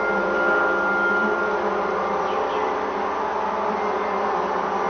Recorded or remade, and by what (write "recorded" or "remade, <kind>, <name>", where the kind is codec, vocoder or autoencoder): recorded